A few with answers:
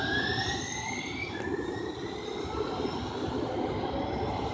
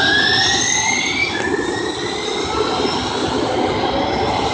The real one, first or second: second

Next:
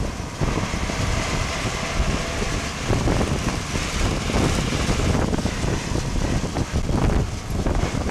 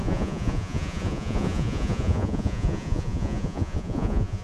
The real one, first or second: first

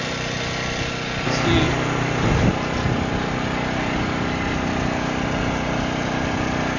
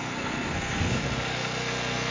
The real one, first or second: first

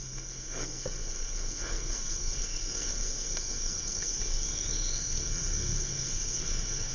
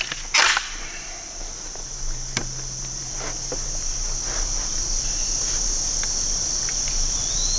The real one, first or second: second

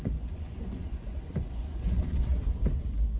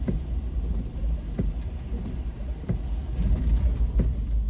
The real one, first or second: second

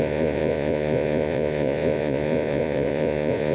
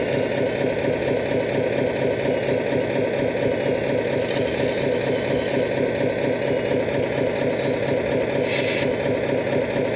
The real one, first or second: second